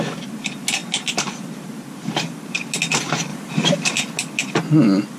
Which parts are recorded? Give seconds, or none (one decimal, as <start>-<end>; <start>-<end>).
0.0-0.8; 1.5-3.3; 4.0-5.2